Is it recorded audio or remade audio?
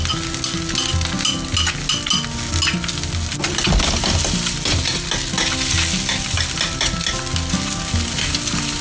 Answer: recorded